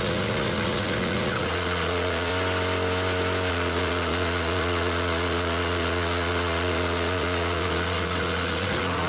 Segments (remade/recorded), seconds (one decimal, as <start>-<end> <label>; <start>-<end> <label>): 0.0-2.3 remade; 2.3-3.5 recorded; 3.5-9.1 remade